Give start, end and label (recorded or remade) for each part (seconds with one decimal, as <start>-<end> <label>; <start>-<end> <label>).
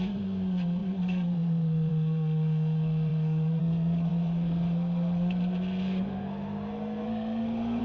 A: 0.0-7.8 remade